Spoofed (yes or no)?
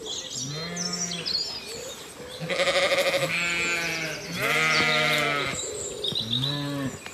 no